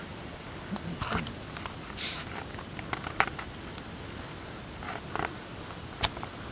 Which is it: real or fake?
real